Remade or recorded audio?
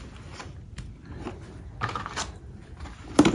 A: recorded